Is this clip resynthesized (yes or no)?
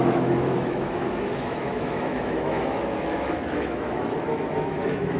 yes